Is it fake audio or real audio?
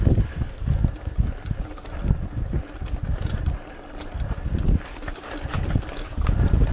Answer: real